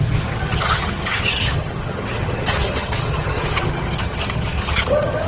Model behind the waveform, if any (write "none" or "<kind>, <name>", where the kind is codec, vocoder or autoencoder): vocoder, HiFi-GAN